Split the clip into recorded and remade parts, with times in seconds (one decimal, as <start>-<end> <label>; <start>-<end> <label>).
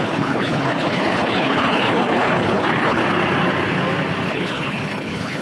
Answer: 0.0-3.0 remade; 3.0-4.3 recorded; 4.3-5.4 remade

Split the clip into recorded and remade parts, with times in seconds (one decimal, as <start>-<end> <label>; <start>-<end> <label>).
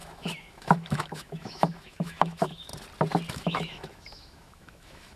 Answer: 0.0-2.7 remade; 2.7-3.3 recorded; 3.3-5.2 remade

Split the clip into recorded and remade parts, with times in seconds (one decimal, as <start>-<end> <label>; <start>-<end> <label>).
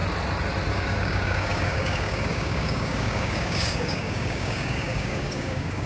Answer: 0.0-0.7 recorded; 0.7-5.9 remade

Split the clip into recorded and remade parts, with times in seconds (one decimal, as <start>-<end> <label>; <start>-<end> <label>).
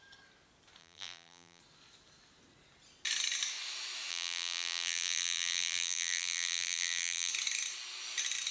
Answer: 0.0-0.8 recorded; 0.8-1.6 remade; 1.6-4.1 recorded; 4.1-7.3 remade; 7.3-8.5 recorded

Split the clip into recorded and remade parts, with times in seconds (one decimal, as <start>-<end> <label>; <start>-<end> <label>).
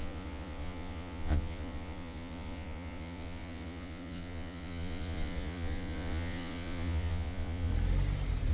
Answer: 0.0-7.7 remade; 7.7-8.5 recorded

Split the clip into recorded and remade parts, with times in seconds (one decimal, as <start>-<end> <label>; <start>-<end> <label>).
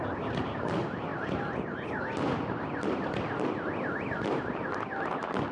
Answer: 0.0-5.5 recorded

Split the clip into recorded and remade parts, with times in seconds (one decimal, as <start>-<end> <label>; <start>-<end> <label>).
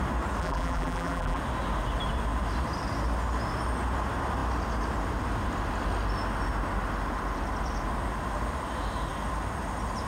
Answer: 0.0-0.4 recorded; 0.4-1.4 remade; 1.4-10.1 recorded